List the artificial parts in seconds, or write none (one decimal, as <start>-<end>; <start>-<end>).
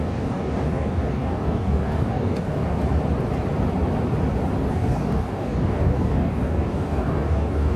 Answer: 0.0-2.8; 4.7-7.8